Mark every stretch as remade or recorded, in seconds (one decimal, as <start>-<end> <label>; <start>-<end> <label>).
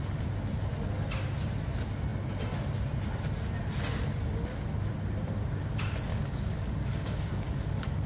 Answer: 0.0-6.1 recorded; 6.1-8.1 remade